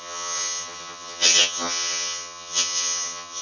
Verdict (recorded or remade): remade